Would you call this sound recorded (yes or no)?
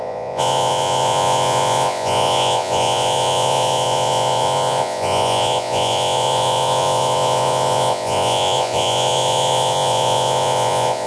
no